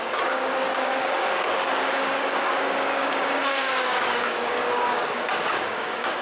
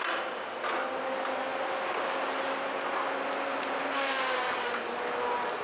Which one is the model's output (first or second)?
first